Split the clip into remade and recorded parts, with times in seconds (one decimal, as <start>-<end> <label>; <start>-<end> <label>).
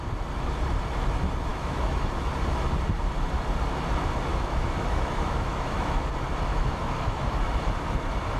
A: 0.0-1.5 recorded; 1.5-2.3 remade; 2.3-4.3 recorded; 4.3-6.1 remade; 6.1-6.5 recorded; 6.5-7.7 remade; 7.7-8.4 recorded